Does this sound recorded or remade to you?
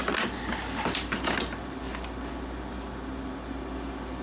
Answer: recorded